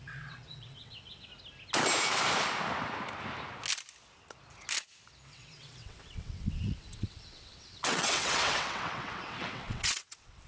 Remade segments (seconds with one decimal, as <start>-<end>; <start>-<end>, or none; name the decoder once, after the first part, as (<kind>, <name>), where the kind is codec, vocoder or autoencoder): 0.0-1.3 (vocoder, WaveNeXt); 5.3-10.5